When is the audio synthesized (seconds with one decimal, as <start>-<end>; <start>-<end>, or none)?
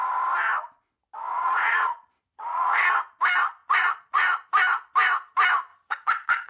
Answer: 1.3-2.9; 3.6-4.5; 5.7-6.5